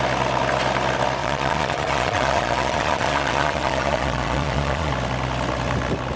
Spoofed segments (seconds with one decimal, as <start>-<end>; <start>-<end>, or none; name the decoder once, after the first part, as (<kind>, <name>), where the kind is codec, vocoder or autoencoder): 1.2-4.9 (vocoder, Vocos)

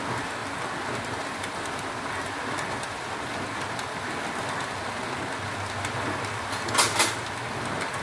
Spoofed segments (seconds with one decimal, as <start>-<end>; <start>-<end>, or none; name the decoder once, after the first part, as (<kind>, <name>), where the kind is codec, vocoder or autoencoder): none